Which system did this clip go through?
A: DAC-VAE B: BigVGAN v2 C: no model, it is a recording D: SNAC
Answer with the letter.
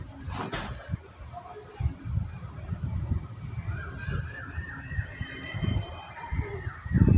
B